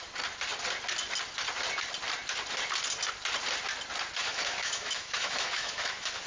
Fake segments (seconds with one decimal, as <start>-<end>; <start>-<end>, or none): 4.2-6.3